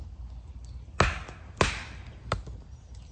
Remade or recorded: recorded